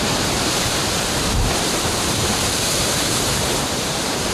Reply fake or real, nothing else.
fake